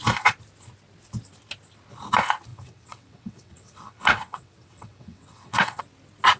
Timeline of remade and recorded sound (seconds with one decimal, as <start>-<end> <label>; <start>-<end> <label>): 0.0-2.5 recorded; 2.5-5.8 remade; 5.8-6.4 recorded